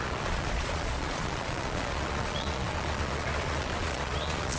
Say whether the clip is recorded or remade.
remade